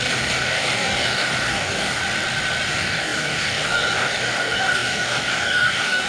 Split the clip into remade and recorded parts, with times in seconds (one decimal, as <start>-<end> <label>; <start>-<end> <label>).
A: 0.0-2.0 remade; 2.0-2.7 recorded; 2.7-6.1 remade